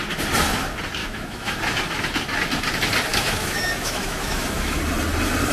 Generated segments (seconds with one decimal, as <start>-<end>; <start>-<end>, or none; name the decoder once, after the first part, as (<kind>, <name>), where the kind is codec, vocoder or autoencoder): 1.0-1.6 (autoencoder, DAC-VAE); 3.1-4.8